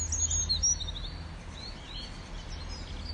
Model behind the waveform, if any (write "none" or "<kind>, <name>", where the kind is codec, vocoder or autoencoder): none